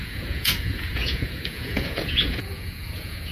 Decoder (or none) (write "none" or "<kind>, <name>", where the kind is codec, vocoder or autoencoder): vocoder, Vocos